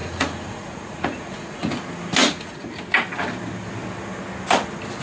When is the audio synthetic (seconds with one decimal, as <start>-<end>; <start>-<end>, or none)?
0.0-1.7; 2.2-2.7